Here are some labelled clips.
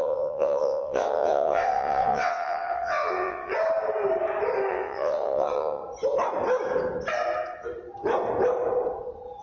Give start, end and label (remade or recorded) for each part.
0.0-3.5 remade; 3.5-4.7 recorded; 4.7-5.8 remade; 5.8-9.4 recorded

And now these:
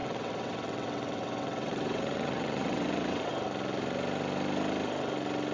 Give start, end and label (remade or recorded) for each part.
0.0-3.3 remade; 3.3-5.5 recorded

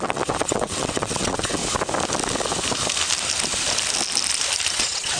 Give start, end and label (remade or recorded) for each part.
0.0-1.6 remade; 1.6-4.7 recorded; 4.7-5.2 remade

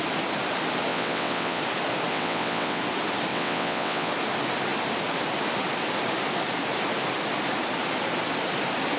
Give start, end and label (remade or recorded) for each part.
0.0-0.9 recorded; 0.9-1.6 remade; 1.6-2.1 recorded; 2.1-2.8 remade; 2.8-3.3 recorded; 3.3-4.1 remade; 4.1-9.0 recorded

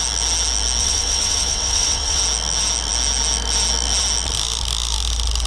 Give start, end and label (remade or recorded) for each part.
0.0-0.8 recorded; 0.8-2.2 remade; 2.2-5.5 recorded

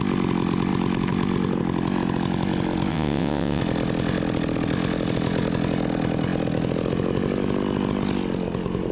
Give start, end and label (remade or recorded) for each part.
0.0-2.9 recorded; 2.9-3.6 remade; 3.6-8.9 recorded